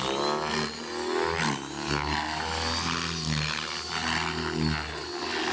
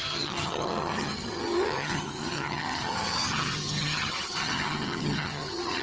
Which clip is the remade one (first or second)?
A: second